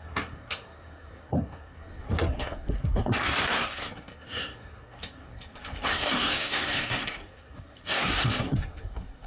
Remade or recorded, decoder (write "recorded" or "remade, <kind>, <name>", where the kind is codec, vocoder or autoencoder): remade, codec, SNAC